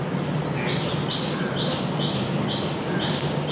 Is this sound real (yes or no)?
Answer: yes